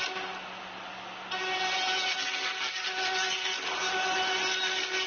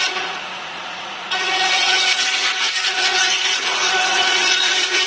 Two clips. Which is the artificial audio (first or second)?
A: second